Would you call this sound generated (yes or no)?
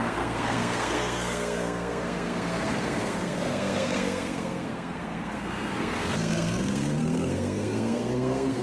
yes